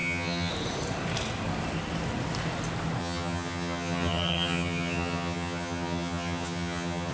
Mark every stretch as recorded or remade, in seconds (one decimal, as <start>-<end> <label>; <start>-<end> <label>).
0.0-0.5 remade; 0.5-3.0 recorded; 3.0-7.1 remade